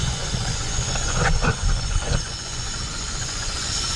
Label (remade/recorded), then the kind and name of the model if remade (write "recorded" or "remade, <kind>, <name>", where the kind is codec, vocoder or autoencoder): remade, vocoder, Vocos